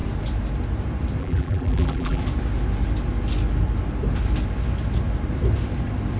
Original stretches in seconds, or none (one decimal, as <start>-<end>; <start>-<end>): 0.0-1.2; 2.2-6.2